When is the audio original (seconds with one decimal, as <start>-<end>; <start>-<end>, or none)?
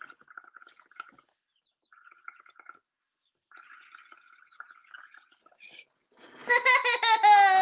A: 0.0-7.6